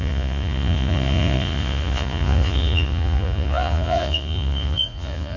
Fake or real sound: fake